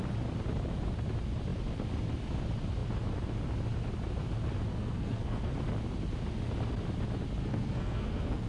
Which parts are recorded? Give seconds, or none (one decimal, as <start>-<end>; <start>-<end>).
0.0-4.7; 5.5-7.4